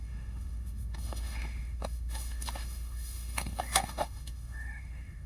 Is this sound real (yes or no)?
no